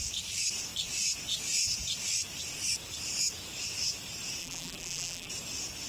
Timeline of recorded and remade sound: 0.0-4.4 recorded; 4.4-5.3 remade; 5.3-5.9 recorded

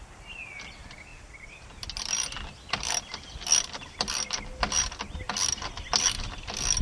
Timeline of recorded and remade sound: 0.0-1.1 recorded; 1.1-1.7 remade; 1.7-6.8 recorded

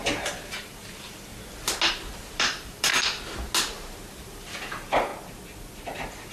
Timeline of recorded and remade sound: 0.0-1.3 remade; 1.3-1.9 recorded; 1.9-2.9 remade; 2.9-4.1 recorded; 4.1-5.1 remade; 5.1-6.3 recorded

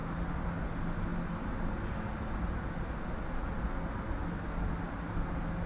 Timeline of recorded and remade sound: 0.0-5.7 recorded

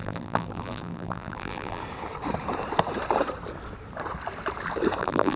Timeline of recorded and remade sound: 0.0-1.8 remade; 1.8-5.0 recorded; 5.0-5.4 remade

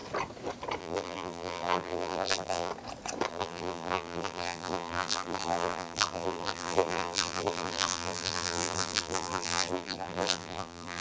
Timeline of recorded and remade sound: 0.0-0.8 recorded; 0.8-2.7 remade; 2.7-3.3 recorded; 3.3-11.0 remade